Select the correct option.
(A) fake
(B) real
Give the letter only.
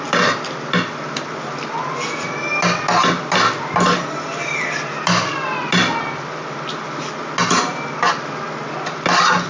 B